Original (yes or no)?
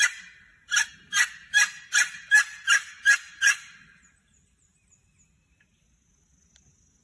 yes